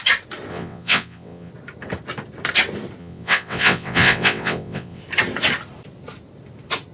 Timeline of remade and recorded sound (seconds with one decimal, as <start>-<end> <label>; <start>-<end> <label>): 0.0-0.5 recorded; 0.5-1.5 remade; 1.5-3.0 recorded; 3.0-5.0 remade; 5.0-6.9 recorded